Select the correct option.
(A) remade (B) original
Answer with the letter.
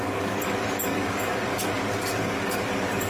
A